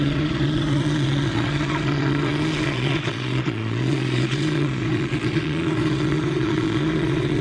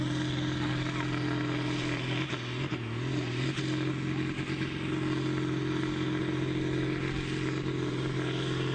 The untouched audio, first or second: second